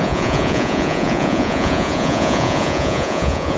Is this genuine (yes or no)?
no